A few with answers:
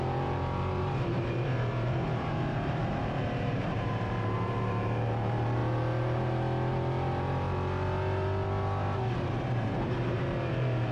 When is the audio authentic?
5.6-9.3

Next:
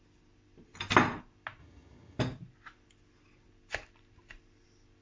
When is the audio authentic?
0.0-1.6; 2.2-5.0